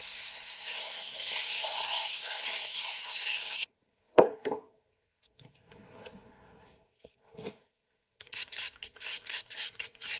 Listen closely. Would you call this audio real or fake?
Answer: fake